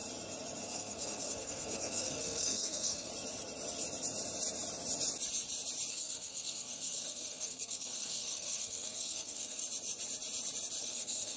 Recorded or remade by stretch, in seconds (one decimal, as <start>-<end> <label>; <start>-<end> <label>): 0.0-0.6 recorded; 0.6-3.1 remade; 3.1-5.9 recorded; 5.9-9.6 remade; 9.6-10.8 recorded; 10.8-11.4 remade

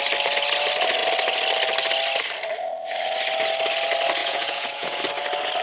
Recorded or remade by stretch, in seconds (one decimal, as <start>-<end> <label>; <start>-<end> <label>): 0.0-4.2 recorded; 4.2-5.0 remade; 5.0-5.6 recorded

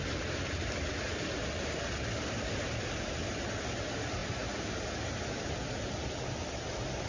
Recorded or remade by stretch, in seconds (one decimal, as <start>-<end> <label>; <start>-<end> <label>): 0.0-7.1 recorded

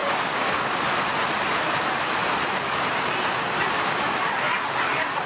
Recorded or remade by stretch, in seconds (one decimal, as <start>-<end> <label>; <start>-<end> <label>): 0.0-0.7 remade; 0.7-5.3 recorded

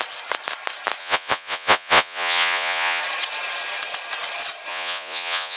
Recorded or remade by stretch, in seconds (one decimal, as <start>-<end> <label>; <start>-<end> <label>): 0.0-1.0 recorded; 1.0-3.0 remade; 3.0-4.7 recorded; 4.7-5.6 remade

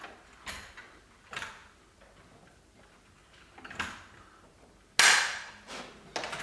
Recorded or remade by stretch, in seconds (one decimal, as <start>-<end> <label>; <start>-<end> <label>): 0.0-6.4 recorded

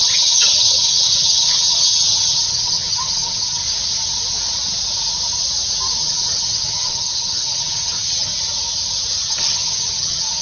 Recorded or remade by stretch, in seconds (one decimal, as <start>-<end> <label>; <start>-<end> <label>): 0.0-3.6 remade; 3.6-6.0 recorded; 6.0-8.3 remade; 8.3-9.3 recorded; 9.3-10.4 remade